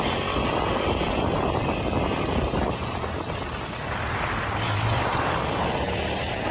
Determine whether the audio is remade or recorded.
recorded